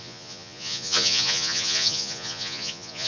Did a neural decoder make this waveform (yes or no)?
yes